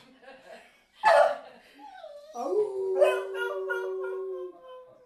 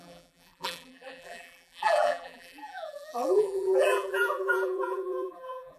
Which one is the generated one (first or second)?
second